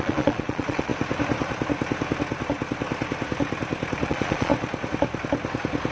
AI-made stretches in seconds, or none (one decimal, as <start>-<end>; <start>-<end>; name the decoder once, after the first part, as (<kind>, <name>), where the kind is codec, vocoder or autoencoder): 0.0-0.9 (vocoder, Vocos); 4.1-4.5